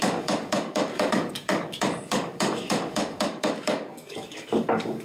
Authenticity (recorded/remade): remade